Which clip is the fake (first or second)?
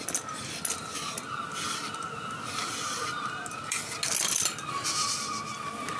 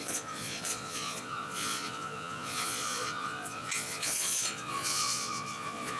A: second